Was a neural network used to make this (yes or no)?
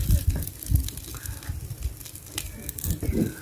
yes